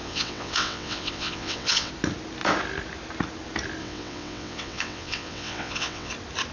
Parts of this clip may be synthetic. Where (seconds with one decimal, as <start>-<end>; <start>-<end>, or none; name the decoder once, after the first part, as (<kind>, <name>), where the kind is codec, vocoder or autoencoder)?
0.0-1.9 (vocoder, WaveNeXt); 3.8-6.1